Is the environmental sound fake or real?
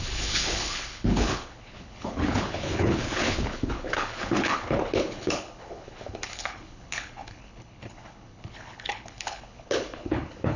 fake